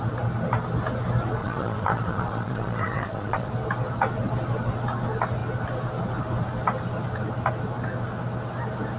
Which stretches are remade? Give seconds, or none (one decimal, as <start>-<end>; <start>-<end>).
1.4-3.5